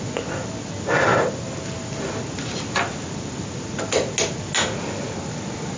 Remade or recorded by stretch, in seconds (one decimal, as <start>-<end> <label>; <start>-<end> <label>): 0.0-5.8 recorded